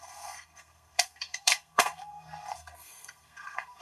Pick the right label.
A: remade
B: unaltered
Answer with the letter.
A